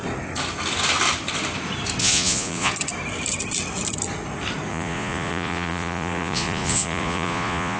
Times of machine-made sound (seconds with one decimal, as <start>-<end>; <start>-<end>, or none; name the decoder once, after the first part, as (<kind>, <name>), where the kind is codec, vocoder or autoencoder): 2.0-2.7 (vocoder, Vocos); 4.7-7.8

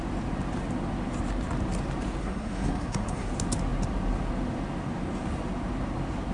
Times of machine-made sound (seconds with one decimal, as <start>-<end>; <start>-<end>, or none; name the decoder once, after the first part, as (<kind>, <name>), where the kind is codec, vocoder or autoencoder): 2.2-3.3 (codec, SNAC)

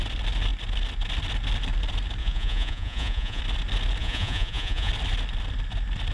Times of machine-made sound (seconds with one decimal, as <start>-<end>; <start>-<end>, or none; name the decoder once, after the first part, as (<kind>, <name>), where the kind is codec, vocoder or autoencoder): 2.2-3.4 (vocoder, Vocos); 4.0-4.9

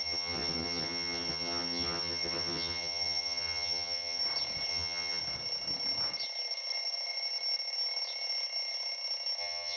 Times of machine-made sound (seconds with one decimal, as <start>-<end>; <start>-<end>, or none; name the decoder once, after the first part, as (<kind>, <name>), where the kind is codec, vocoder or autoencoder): 0.0-4.2 (vocoder, HiFi-GAN); 4.7-5.2; 9.4-9.8

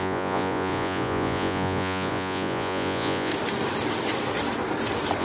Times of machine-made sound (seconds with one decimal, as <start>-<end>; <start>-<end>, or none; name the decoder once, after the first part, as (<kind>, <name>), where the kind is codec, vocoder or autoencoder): 0.0-3.3 (vocoder, Vocos)

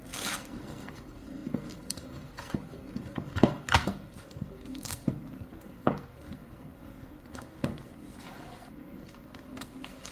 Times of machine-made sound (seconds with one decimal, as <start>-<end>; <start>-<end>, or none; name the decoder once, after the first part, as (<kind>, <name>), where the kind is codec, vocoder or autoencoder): 0.0-10.1 (codec, SNAC)